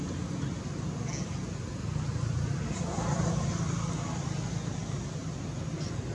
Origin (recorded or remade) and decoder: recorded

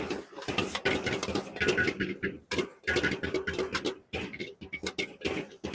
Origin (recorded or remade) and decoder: recorded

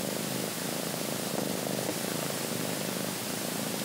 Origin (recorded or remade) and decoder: recorded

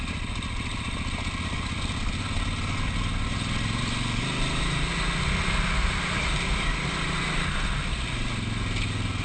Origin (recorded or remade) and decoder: recorded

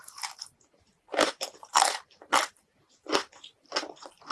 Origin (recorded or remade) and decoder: remade, vocoder, BigVGAN v2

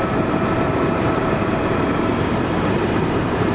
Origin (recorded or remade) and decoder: remade, vocoder, BigVGAN v2